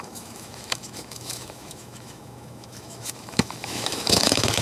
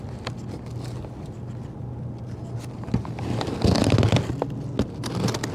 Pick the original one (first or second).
second